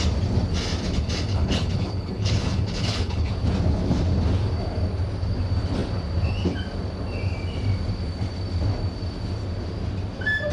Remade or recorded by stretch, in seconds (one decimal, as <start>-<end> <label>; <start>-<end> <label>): 0.0-1.3 recorded; 1.3-3.3 remade; 3.3-10.5 recorded